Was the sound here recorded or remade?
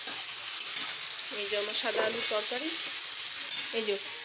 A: recorded